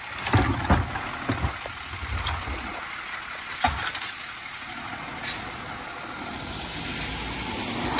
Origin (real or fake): real